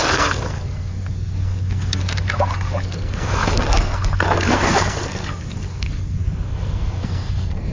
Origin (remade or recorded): remade